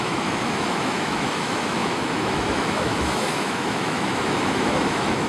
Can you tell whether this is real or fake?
fake